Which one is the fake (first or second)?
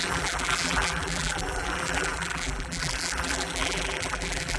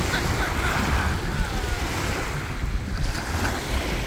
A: first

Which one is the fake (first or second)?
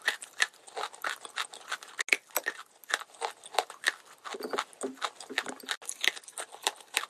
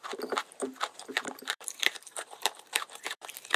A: second